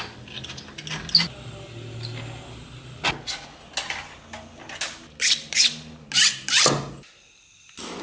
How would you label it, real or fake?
real